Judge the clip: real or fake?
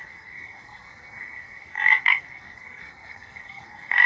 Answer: fake